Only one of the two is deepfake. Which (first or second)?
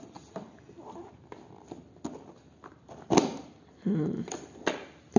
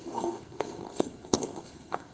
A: second